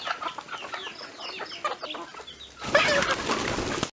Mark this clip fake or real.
real